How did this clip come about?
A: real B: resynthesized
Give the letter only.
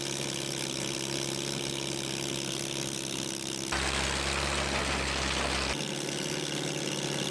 A